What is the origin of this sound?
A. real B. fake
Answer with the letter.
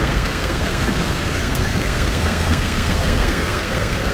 B